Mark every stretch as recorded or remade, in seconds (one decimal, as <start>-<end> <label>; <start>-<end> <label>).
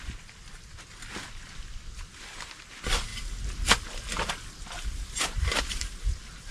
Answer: 0.0-6.5 recorded